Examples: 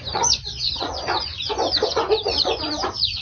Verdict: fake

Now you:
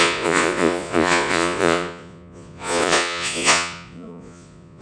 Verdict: fake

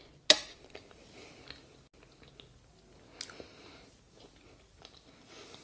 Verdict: real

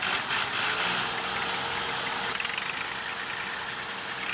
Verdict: real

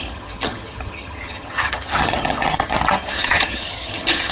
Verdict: fake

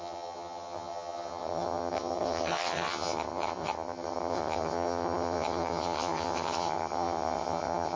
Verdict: fake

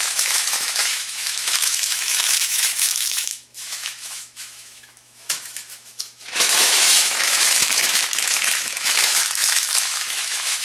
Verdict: fake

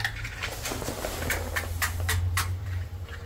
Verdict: fake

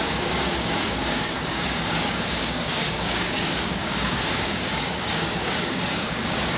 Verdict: fake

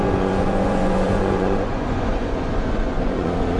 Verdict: fake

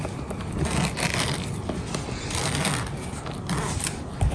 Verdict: real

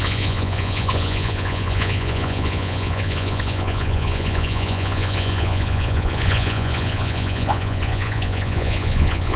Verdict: fake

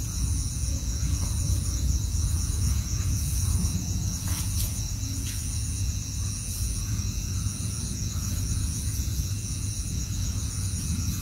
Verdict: fake